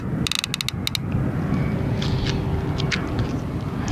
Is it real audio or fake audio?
real